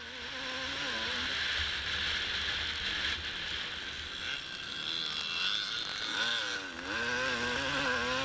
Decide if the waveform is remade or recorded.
recorded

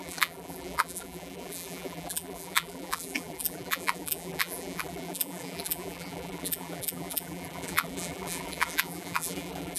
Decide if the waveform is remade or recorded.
remade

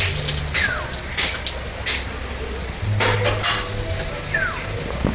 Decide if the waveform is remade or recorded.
recorded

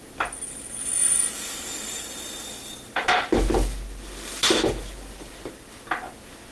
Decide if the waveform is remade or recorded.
recorded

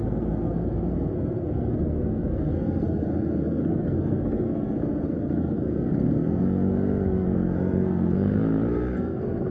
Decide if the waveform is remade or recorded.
remade